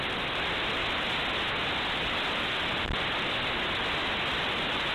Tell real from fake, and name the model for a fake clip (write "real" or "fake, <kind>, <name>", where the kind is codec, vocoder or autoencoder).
real